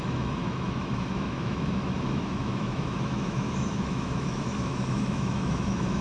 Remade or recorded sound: remade